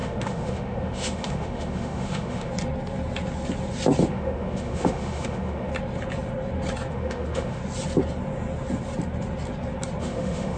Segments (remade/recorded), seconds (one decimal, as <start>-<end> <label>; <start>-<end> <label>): 0.0-2.5 remade; 2.5-4.1 recorded; 4.1-5.7 remade; 5.7-6.9 recorded; 6.9-7.6 remade; 7.6-10.0 recorded; 10.0-10.6 remade